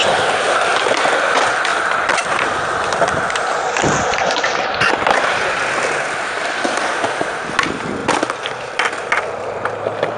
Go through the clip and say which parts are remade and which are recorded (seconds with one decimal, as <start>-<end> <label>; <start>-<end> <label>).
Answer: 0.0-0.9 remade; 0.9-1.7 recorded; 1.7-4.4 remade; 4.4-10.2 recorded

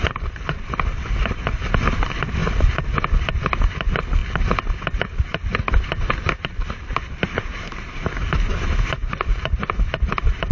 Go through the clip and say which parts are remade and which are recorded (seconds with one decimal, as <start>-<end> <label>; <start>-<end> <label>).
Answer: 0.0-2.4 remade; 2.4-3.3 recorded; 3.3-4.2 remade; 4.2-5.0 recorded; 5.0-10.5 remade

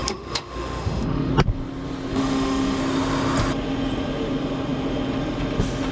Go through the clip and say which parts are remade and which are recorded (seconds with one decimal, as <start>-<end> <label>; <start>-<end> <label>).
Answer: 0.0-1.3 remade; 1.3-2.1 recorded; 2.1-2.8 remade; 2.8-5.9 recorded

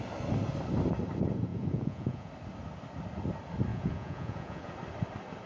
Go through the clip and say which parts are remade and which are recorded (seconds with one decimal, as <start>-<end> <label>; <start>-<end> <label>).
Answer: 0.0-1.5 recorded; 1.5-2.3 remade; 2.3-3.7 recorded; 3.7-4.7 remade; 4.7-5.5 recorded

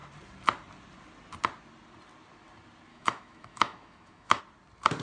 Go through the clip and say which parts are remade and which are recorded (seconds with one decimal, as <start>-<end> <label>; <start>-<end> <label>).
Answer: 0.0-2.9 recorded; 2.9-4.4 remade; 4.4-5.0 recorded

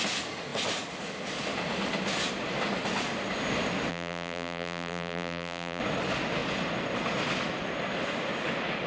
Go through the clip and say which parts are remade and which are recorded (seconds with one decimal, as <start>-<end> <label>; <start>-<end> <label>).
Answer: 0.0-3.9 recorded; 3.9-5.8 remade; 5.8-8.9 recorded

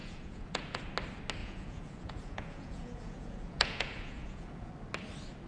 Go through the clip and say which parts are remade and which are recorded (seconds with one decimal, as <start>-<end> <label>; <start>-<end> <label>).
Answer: 0.0-0.8 remade; 0.8-1.4 recorded; 1.4-4.7 remade; 4.7-5.5 recorded